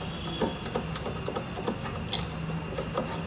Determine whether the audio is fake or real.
real